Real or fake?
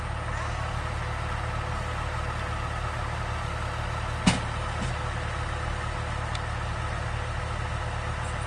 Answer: real